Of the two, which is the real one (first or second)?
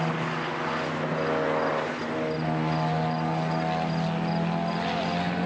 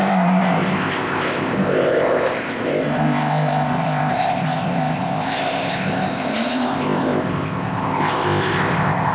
first